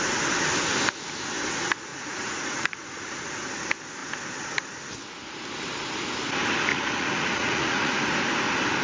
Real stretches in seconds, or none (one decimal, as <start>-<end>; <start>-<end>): 0.0-1.9; 3.2-6.7; 8.0-8.8